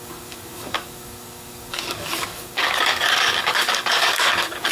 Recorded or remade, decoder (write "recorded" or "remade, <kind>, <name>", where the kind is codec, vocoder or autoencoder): remade, codec, DAC